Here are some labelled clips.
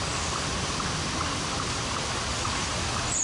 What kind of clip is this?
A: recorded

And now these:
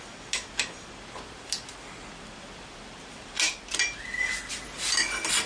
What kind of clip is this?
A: recorded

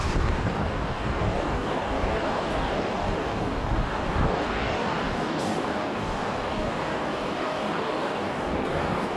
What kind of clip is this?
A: remade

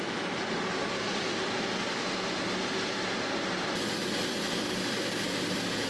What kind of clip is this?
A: recorded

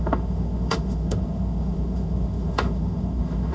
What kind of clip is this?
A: remade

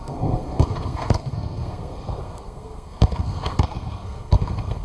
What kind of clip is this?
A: remade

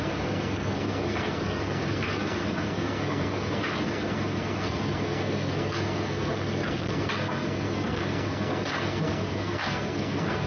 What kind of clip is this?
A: remade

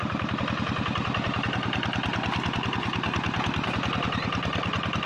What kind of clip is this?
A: recorded